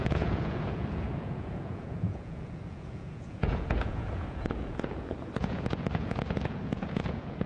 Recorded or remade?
remade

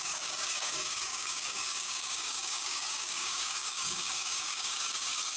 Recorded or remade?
remade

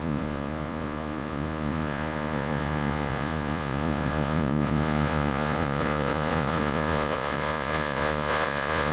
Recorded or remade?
remade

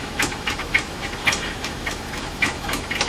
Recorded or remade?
remade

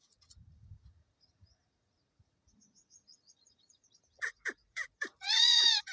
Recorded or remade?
remade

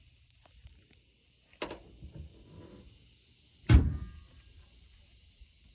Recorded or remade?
recorded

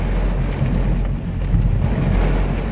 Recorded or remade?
recorded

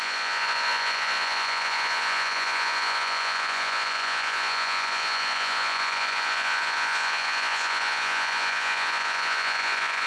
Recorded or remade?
remade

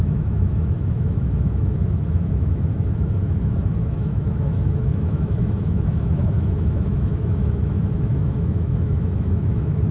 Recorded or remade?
remade